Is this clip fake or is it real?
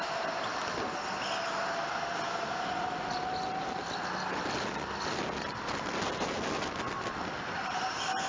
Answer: real